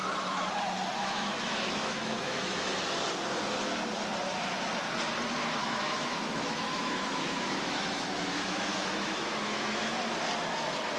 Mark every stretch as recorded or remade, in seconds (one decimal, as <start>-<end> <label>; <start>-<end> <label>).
0.0-1.0 recorded; 1.0-2.8 remade; 2.8-5.6 recorded; 5.6-10.0 remade; 10.0-11.0 recorded

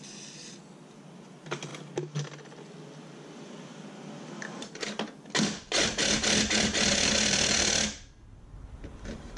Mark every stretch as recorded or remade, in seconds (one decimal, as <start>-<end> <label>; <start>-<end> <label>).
0.0-9.4 recorded

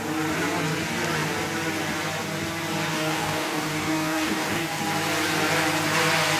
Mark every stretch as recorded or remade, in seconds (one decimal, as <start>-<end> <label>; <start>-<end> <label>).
0.0-2.9 recorded; 2.9-4.8 remade; 4.8-6.4 recorded

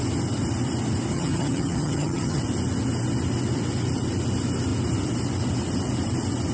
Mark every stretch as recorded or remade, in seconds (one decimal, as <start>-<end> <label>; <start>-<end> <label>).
0.0-1.1 recorded; 1.1-2.4 remade; 2.4-6.5 recorded

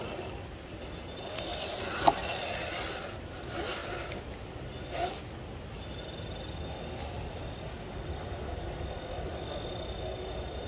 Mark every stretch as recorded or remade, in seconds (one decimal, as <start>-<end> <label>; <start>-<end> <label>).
0.0-10.7 recorded

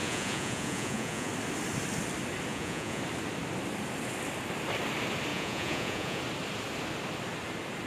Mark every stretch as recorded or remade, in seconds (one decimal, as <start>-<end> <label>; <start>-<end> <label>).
0.0-1.3 remade; 1.3-2.5 recorded; 2.5-3.0 remade; 3.0-5.3 recorded; 5.3-6.2 remade; 6.2-7.9 recorded

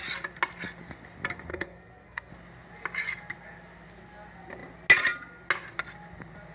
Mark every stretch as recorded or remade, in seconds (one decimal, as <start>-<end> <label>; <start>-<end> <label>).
0.0-1.5 recorded; 1.5-2.3 remade; 2.3-6.5 recorded